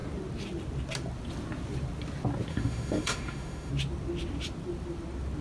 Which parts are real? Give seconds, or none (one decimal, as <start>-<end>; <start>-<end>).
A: 0.0-2.5; 3.7-5.4